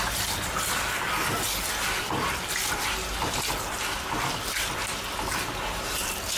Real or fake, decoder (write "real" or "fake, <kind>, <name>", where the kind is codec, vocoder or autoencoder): real